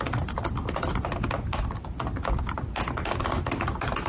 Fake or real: real